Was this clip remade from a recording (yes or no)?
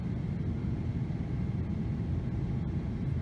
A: no